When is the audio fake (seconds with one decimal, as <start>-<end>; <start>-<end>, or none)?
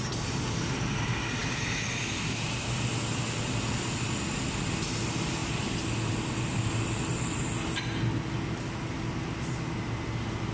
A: none